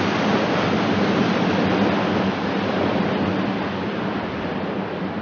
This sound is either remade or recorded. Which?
recorded